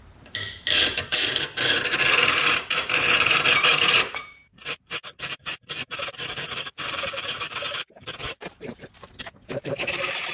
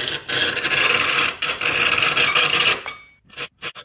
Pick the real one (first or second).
second